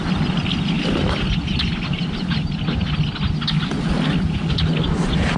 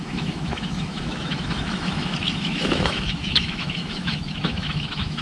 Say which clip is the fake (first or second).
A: second